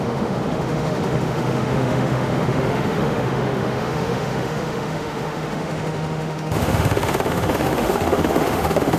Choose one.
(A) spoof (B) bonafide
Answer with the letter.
A